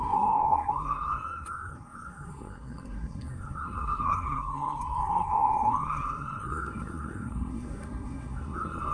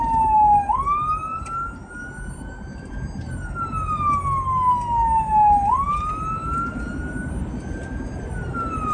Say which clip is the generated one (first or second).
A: first